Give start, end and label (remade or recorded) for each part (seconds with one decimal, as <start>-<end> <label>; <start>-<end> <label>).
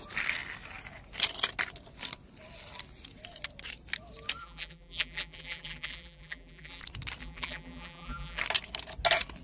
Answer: 0.0-4.4 recorded; 4.4-6.8 remade; 6.8-7.2 recorded; 7.2-8.4 remade; 8.4-9.4 recorded